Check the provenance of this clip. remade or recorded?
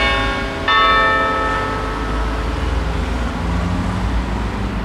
recorded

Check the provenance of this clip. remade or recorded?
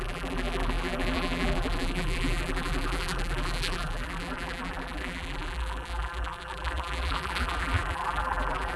remade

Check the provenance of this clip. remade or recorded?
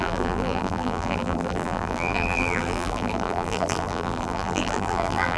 remade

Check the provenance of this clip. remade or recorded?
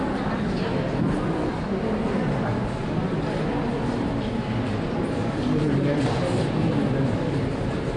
recorded